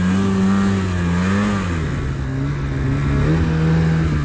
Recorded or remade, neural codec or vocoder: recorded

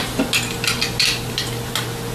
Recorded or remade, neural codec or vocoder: recorded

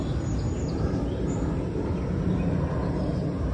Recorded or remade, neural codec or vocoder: recorded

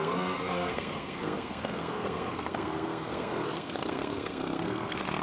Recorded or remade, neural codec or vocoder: remade, codec, SNAC